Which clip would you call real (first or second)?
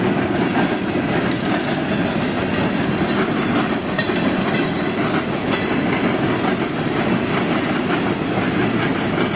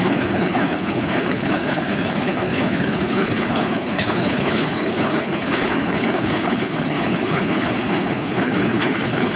first